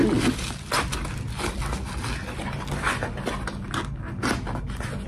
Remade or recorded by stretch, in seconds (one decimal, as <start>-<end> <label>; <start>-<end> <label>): 0.0-5.1 recorded